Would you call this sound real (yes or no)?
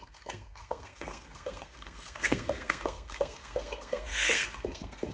no